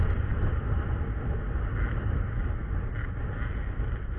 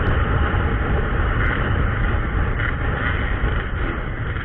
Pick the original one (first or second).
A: first